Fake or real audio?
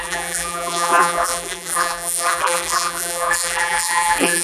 fake